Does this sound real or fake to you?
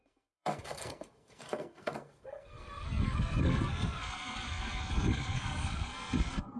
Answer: fake